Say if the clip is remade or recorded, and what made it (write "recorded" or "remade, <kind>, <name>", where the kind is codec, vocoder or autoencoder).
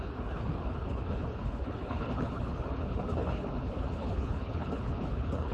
remade, codec, HILCodec